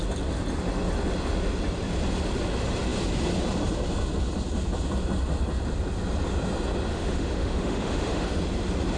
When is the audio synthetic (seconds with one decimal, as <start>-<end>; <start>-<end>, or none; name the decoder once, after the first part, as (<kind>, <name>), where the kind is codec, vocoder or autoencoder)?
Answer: 6.9-8.4 (autoencoder, DAC-VAE)